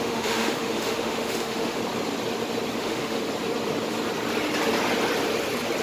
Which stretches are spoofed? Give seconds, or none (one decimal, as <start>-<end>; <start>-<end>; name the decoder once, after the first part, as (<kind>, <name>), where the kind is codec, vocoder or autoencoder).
0.0-1.8 (autoencoder, DAC-VAE); 2.8-3.2